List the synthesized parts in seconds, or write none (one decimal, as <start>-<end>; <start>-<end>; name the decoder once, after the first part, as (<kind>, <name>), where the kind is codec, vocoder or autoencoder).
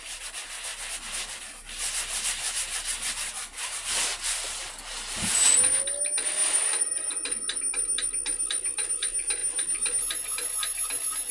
0.7-4.8 (vocoder, BigVGAN v2); 6.4-7.6